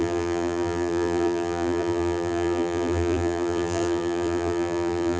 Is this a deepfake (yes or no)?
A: yes